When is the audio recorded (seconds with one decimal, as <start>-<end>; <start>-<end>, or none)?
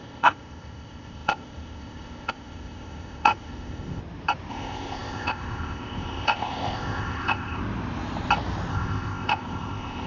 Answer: 4.0-4.5; 7.6-8.7